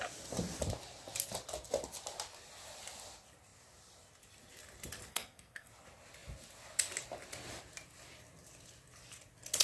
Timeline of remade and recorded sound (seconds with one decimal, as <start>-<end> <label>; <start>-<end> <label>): 0.0-5.1 recorded; 5.1-5.7 remade; 5.7-9.6 recorded